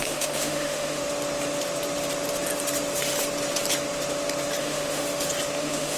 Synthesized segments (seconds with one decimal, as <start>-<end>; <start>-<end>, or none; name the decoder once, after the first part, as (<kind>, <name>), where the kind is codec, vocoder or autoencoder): 0.0-1.0 (autoencoder, DAC-VAE); 4.6-5.0; 5.6-6.0